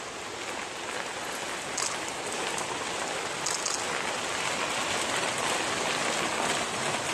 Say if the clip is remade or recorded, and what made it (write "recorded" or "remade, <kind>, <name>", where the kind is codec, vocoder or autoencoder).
recorded